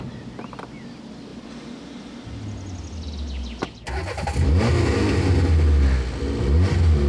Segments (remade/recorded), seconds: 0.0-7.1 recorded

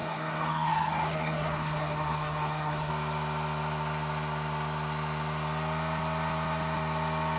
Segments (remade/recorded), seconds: 0.0-2.9 remade; 2.9-7.4 recorded

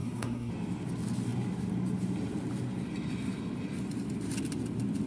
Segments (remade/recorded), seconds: 0.0-0.5 remade; 0.5-5.1 recorded

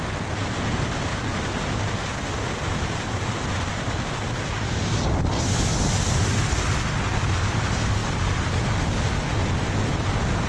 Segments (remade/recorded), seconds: 0.0-10.5 recorded

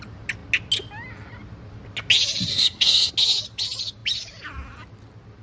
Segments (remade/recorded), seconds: 0.0-2.5 recorded; 2.5-3.1 remade; 3.1-5.4 recorded

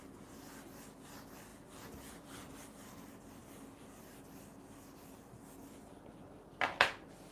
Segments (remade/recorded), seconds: 0.0-7.3 recorded

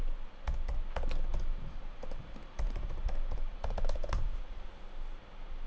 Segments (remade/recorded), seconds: 0.0-1.3 recorded; 1.3-4.7 remade; 4.7-5.7 recorded